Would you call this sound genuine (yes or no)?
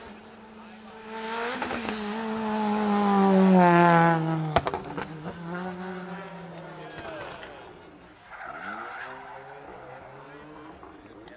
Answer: yes